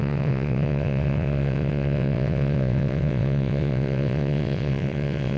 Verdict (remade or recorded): remade